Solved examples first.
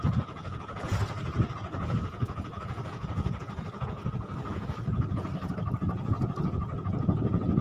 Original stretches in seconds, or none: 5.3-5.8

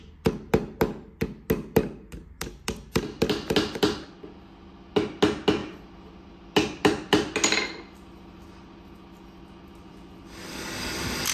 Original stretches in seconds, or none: 0.0-11.3

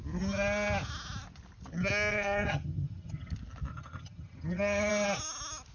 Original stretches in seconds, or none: 0.0-2.1; 3.3-3.7; 4.9-5.7

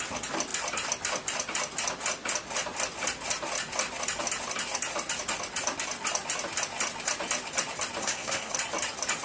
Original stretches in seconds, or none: 0.0-8.0; 8.5-9.2